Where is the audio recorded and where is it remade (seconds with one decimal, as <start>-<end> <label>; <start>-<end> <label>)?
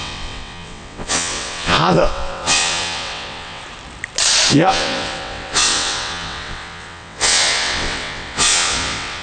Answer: 0.0-3.6 remade; 3.6-4.5 recorded; 4.5-9.2 remade